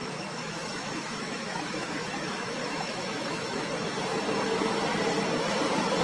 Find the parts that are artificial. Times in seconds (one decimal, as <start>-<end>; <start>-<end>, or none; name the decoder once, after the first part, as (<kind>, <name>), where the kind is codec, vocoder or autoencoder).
0.0-3.6 (autoencoder, DAC-VAE)